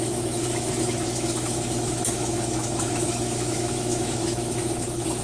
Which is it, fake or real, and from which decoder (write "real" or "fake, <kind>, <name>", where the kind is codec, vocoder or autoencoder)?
fake, autoencoder, DAC-VAE